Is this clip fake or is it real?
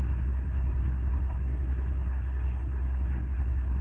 fake